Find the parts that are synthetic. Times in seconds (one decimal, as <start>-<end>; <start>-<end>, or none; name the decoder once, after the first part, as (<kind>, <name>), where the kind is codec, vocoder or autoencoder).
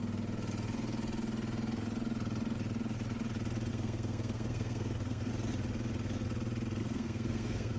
3.7-5.3 (codec, SNAC); 6.8-7.8